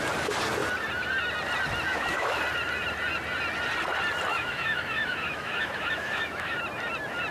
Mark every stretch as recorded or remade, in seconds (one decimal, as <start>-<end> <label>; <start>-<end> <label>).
0.0-1.9 recorded; 1.9-2.4 remade; 2.4-4.3 recorded; 4.3-6.6 remade; 6.6-7.3 recorded

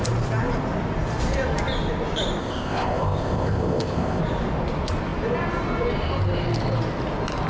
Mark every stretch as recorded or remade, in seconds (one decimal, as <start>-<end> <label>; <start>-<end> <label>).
0.0-2.4 recorded; 2.4-4.2 remade; 4.2-7.5 recorded

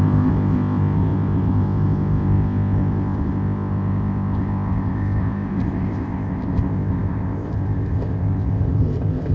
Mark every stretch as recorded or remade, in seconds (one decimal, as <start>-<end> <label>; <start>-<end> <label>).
0.0-9.3 remade

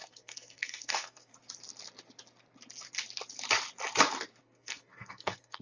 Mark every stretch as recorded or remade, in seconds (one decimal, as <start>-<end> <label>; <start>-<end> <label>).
0.0-1.3 remade; 1.3-4.4 recorded; 4.4-5.6 remade

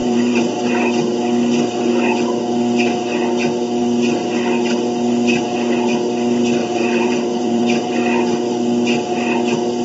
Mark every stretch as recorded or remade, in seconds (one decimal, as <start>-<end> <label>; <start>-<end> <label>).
0.0-0.7 remade; 0.7-6.6 recorded; 6.6-7.9 remade; 7.9-9.8 recorded

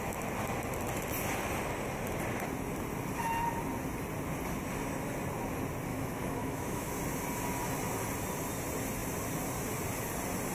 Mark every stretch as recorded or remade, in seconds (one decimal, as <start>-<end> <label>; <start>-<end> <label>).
0.0-5.9 recorded; 5.9-6.9 remade; 6.9-10.5 recorded